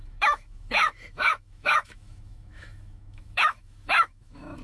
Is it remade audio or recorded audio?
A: remade